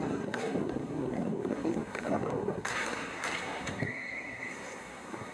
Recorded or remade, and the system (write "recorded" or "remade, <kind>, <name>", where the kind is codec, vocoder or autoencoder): remade, codec, SNAC